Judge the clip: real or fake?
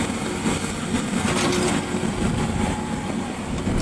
real